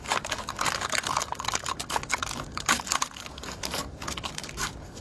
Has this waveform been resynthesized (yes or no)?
yes